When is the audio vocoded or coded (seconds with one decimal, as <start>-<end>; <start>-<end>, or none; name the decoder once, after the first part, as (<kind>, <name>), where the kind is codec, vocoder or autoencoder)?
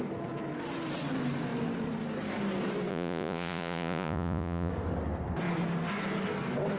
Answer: 2.9-4.7 (vocoder, Vocos)